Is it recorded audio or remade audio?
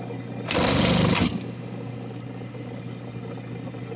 recorded